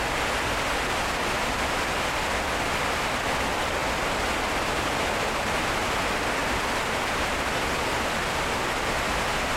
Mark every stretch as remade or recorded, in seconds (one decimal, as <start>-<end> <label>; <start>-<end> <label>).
0.0-6.4 recorded; 6.4-7.4 remade; 7.4-9.6 recorded